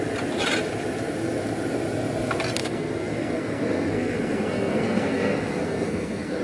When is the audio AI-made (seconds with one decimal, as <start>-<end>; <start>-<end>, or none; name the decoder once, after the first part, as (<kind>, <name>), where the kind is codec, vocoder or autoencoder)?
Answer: 2.6-6.4 (codec, SNAC)